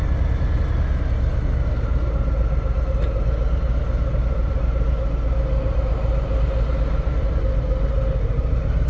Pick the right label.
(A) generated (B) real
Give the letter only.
B